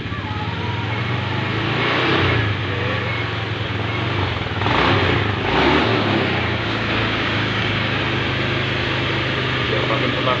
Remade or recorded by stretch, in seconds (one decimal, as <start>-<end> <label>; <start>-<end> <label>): 0.0-5.9 recorded; 5.9-8.0 remade; 8.0-10.4 recorded